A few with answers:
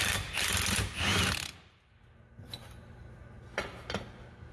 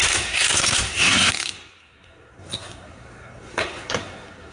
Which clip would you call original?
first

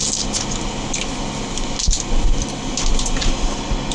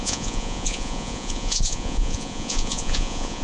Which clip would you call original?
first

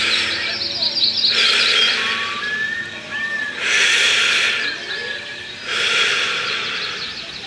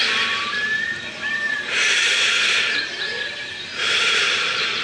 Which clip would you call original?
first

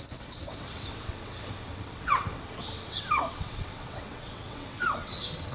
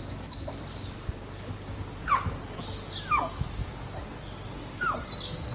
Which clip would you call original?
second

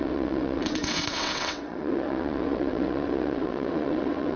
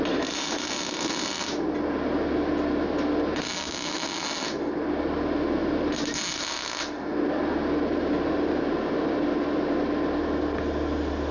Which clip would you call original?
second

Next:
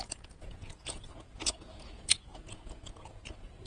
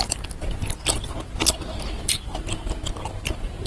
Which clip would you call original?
second